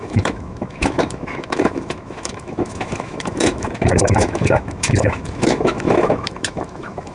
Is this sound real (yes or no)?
no